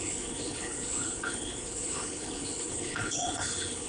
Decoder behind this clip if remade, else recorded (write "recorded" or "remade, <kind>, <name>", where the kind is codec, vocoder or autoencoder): remade, codec, HILCodec